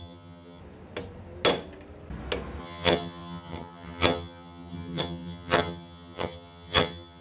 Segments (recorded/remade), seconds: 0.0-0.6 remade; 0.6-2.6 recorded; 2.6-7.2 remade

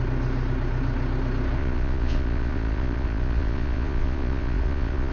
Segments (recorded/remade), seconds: 0.0-1.6 recorded; 1.6-5.1 remade

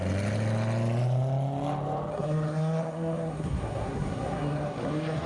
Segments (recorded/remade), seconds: 0.0-2.1 recorded; 2.1-5.3 remade

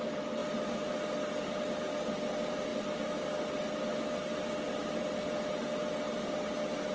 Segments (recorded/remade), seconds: 0.0-6.9 recorded

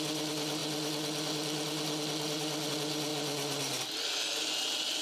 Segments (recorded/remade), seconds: 0.0-5.0 recorded

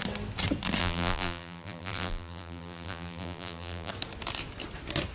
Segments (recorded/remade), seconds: 0.0-0.8 recorded; 0.8-3.9 remade; 3.9-5.1 recorded

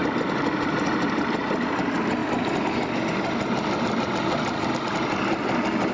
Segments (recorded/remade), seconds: 0.0-5.9 recorded